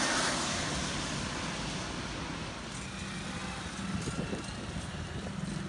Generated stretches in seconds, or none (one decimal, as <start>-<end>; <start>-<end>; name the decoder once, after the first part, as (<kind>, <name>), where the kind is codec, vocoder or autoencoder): none